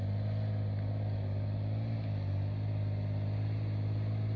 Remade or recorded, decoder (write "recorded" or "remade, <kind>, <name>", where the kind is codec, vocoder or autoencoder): recorded